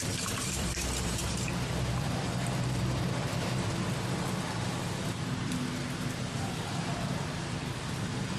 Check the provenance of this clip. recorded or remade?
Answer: remade